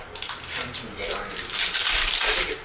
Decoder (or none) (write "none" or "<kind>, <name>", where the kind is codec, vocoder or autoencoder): none